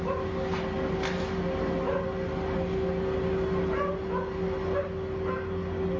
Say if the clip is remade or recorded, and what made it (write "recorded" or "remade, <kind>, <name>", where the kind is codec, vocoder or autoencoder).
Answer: recorded